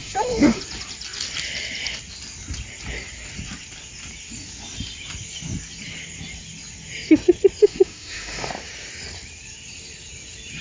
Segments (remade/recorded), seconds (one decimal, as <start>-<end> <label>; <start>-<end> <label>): 0.0-0.6 remade; 0.6-7.6 recorded; 7.6-8.5 remade; 8.5-10.6 recorded